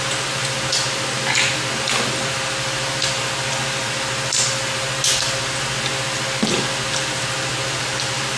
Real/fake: real